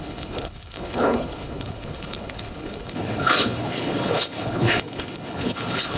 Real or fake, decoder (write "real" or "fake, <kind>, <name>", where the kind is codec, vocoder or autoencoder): fake, codec, HILCodec